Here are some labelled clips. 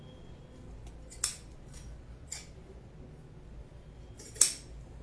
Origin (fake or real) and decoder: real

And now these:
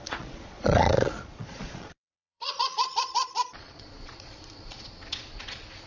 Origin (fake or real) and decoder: fake, vocoder, Vocos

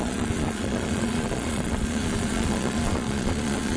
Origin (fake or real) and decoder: fake, vocoder, Vocos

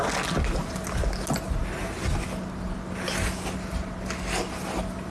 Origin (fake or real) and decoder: real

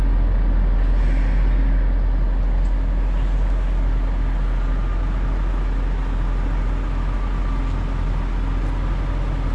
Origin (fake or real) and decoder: real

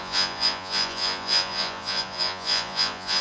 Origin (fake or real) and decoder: fake, vocoder, Vocos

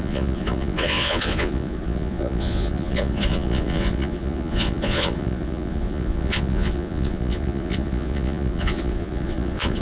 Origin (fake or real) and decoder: fake, vocoder, Vocos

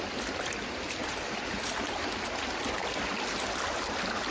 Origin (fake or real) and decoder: real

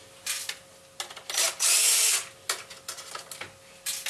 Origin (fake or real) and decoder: real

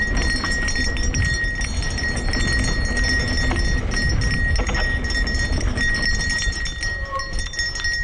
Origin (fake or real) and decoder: real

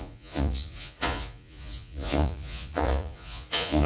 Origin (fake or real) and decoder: fake, vocoder, Vocos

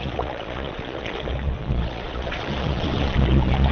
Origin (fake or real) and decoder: fake, vocoder, Vocos